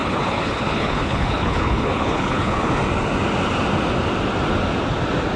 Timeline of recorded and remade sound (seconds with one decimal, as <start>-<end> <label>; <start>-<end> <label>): 0.0-2.7 remade; 2.7-5.4 recorded